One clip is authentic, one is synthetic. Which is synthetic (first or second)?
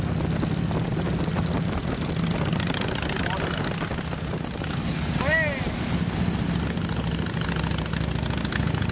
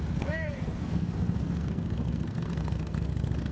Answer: second